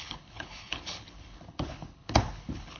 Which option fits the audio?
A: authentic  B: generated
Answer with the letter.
B